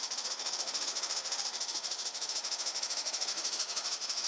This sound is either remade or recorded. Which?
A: remade